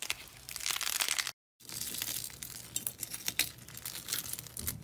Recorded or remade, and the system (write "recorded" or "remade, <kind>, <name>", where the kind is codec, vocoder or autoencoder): recorded